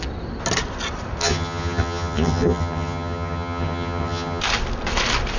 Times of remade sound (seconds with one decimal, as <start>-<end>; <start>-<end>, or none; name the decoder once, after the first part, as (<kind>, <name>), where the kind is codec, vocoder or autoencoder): 1.2-4.4 (vocoder, HiFi-GAN)